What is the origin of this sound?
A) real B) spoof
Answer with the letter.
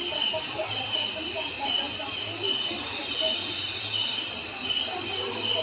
B